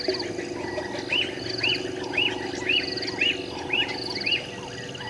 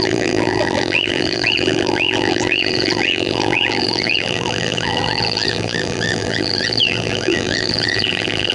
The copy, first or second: second